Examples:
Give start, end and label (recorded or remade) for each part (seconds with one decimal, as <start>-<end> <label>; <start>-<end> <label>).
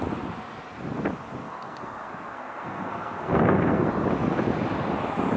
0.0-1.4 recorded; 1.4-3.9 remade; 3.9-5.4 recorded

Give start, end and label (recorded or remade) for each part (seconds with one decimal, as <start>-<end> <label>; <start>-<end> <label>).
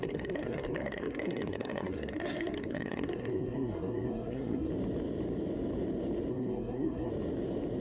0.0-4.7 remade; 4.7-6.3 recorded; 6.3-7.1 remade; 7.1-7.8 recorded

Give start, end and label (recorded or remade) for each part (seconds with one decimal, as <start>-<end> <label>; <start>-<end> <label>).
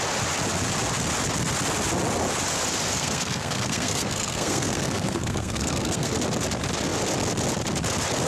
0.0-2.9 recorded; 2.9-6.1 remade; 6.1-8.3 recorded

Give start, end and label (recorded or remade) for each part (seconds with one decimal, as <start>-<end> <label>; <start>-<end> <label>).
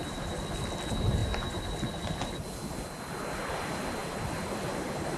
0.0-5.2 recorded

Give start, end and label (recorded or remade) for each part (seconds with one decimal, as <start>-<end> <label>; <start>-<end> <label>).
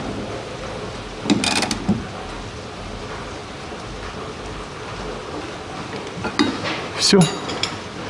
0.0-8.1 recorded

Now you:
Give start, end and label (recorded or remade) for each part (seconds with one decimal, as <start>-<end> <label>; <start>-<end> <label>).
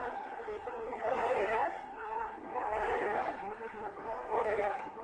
0.0-5.0 remade